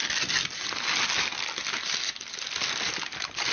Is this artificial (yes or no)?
no